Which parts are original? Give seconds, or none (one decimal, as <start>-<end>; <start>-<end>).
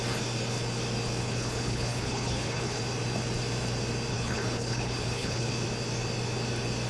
0.0-1.2; 2.8-4.1; 5.5-6.9